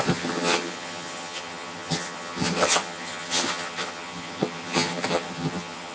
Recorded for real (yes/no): no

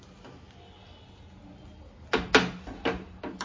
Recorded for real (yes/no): yes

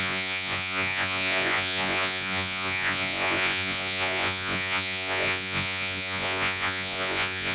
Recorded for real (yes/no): no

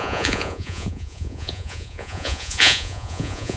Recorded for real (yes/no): no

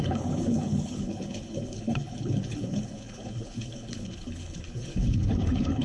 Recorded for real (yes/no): no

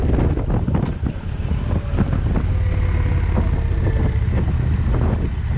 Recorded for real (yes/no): yes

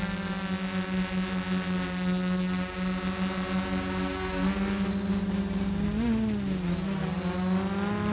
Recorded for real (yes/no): yes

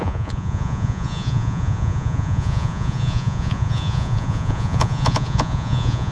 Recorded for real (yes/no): no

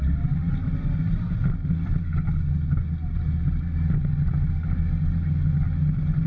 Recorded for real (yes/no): yes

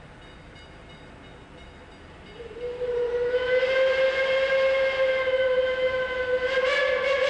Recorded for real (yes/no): yes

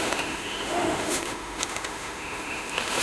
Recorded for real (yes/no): no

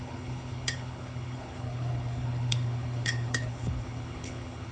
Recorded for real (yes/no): no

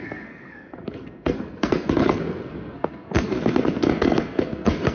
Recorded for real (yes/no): no